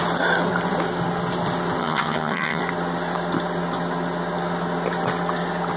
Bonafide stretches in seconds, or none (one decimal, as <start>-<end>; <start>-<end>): 0.0-1.8; 2.6-5.8